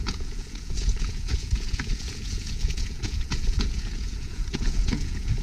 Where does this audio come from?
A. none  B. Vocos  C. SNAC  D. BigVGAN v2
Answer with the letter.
B